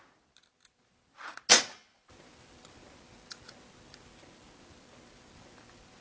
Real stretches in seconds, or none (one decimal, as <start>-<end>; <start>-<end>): 0.0-6.0